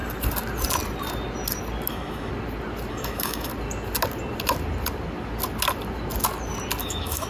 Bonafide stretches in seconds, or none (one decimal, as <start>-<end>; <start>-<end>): 0.0-1.9; 2.3-2.9; 3.5-6.8